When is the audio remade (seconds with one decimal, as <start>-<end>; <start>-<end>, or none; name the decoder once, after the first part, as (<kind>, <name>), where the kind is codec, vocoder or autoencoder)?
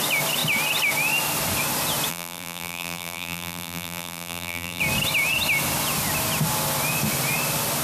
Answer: 2.1-4.8 (vocoder, BigVGAN v2)